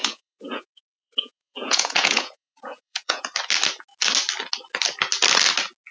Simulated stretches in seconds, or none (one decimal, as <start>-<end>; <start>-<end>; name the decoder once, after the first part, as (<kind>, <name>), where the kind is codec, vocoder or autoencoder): 0.0-3.2 (vocoder, Vocos)